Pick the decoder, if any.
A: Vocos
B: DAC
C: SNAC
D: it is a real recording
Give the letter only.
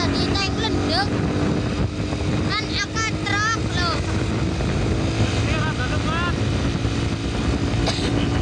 D